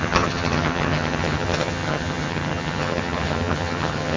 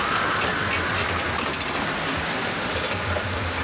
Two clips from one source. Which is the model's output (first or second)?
first